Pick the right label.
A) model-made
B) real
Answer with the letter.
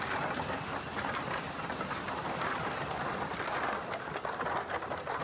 B